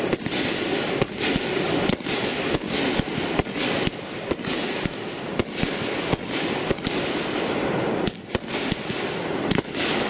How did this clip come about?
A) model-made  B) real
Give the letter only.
B